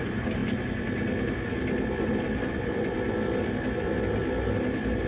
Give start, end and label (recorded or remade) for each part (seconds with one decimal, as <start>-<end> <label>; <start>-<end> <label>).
0.0-5.1 recorded